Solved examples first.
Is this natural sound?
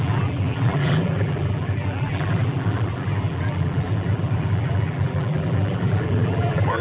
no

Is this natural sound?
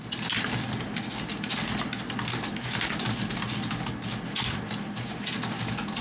yes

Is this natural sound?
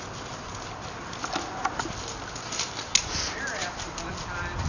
yes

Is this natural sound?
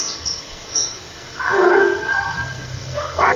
no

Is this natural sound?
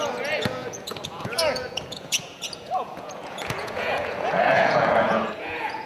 no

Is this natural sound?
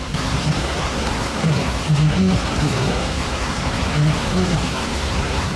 no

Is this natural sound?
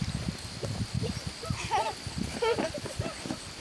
yes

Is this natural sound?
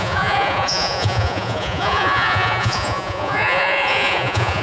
no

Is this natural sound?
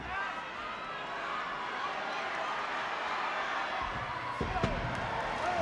yes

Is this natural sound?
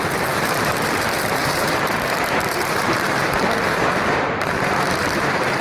no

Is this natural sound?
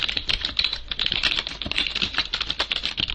no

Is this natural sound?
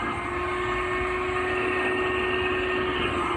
yes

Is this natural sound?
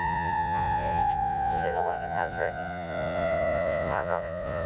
no